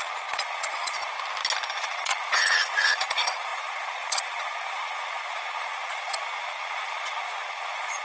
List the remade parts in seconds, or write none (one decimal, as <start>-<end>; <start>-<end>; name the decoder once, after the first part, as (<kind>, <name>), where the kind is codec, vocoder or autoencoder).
0.0-1.1 (vocoder, Vocos); 1.8-8.0